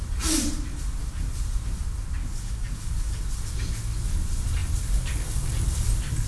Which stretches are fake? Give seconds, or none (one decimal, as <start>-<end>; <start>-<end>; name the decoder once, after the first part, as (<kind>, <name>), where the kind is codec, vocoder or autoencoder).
2.2-3.2 (codec, DAC)